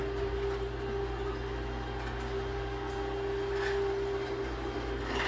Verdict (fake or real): real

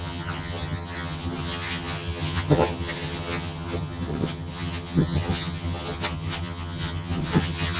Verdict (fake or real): fake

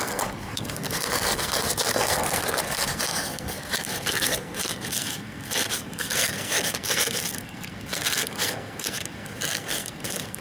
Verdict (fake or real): fake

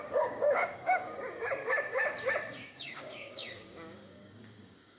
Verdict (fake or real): fake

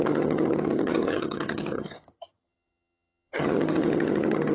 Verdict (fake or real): fake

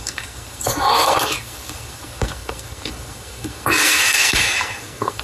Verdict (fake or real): fake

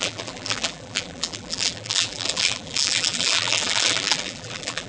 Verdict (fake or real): fake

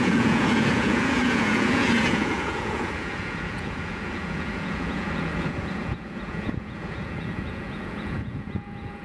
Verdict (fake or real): fake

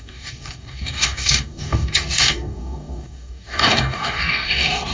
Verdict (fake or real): fake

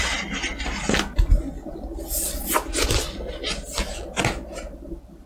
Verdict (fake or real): real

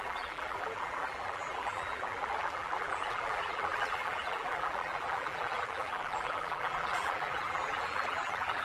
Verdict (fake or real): fake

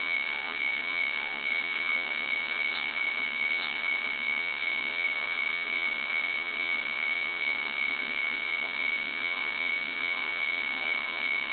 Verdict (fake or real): fake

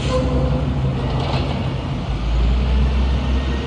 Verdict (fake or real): real